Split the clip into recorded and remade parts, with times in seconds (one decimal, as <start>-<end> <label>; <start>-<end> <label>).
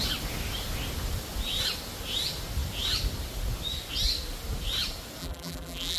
0.0-5.2 recorded; 5.2-6.0 remade